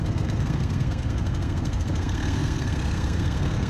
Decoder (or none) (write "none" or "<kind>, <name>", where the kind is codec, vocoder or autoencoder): codec, SNAC